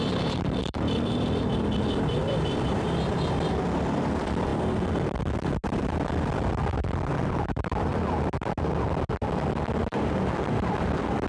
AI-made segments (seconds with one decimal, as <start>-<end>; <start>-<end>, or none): 0.0-4.5; 5.7-7.9; 9.8-11.3